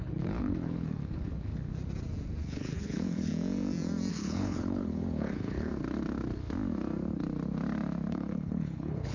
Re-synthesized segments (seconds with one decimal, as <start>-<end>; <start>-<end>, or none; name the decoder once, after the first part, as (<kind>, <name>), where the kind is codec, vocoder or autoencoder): 0.0-1.5 (codec, HILCodec); 2.4-3.3; 4.1-5.7; 8.1-9.1